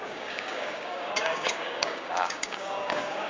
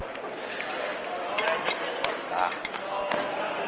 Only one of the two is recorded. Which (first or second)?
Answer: second